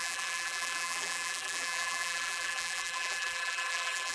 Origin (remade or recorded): remade